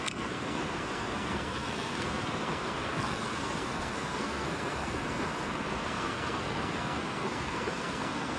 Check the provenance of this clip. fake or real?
fake